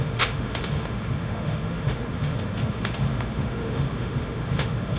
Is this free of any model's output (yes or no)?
no